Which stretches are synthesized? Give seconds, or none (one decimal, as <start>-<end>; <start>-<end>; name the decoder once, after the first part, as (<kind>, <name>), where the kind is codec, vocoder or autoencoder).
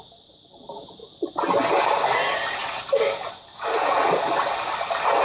none